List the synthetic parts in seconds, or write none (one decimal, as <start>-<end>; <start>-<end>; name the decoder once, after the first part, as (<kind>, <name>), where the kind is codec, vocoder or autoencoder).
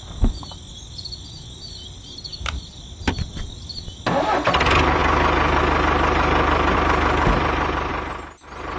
2.3-3.1 (vocoder, BigVGAN v2)